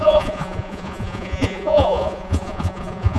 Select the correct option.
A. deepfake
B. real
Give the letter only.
A